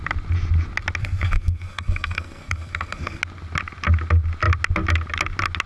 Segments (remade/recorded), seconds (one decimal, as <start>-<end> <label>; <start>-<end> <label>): 0.0-1.0 recorded; 1.0-3.2 remade; 3.2-5.7 recorded